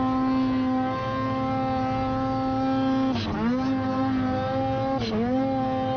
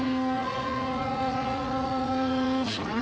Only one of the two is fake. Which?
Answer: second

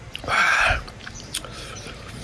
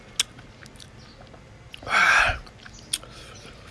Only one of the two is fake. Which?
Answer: first